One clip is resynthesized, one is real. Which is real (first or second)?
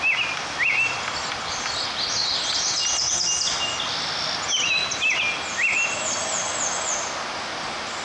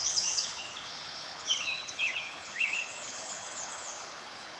first